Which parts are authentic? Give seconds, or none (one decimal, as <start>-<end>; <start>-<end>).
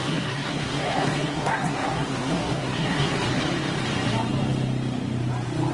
3.4-5.7